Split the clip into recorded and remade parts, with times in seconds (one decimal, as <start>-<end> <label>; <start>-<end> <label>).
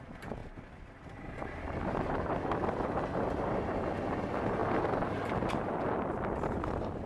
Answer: 0.0-0.4 recorded; 0.4-3.7 remade; 3.7-7.1 recorded